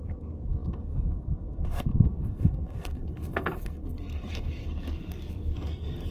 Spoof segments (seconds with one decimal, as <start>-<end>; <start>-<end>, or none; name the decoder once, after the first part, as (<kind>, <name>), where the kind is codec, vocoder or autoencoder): 0.0-6.1 (codec, SNAC)